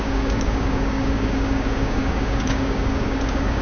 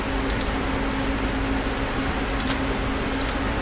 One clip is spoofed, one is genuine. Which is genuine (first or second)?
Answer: second